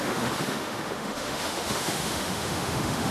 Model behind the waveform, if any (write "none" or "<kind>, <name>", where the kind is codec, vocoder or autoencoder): autoencoder, DAC-VAE